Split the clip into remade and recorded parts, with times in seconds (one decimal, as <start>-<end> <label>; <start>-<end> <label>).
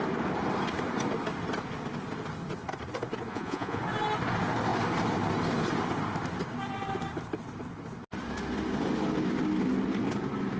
0.0-3.3 recorded; 3.3-3.8 remade; 3.8-10.6 recorded